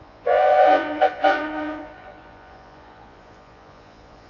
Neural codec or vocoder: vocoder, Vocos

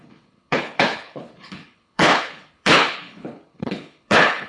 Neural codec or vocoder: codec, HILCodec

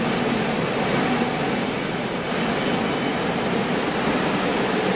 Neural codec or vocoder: none